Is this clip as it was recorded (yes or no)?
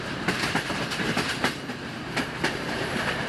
no